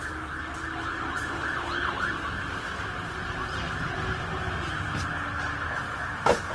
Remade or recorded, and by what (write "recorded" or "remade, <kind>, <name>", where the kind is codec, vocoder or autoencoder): recorded